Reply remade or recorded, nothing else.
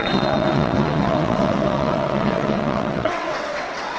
remade